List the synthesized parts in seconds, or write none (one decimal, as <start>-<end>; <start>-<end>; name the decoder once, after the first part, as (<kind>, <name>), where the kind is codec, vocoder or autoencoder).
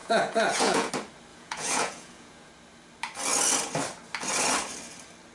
0.0-0.9 (vocoder, Vocos); 1.3-2.5